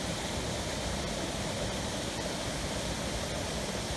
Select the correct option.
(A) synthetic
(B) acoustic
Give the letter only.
B